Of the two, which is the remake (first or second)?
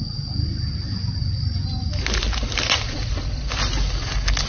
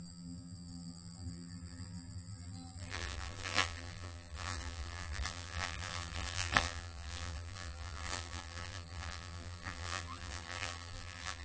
second